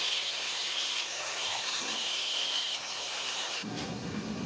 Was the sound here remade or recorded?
remade